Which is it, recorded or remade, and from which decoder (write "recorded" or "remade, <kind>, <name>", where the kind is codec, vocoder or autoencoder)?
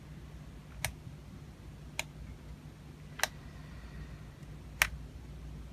recorded